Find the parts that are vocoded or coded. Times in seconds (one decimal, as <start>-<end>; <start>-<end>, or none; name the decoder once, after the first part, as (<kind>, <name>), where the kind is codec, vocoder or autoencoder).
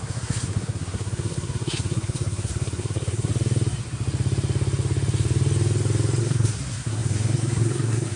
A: 0.0-3.3 (codec, SNAC); 6.2-8.2